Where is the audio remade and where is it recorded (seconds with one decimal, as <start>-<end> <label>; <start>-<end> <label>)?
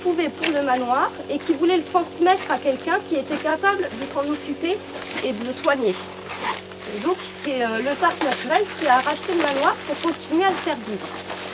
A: 0.0-3.5 recorded; 3.5-6.5 remade; 6.5-6.9 recorded; 6.9-8.5 remade; 8.5-11.5 recorded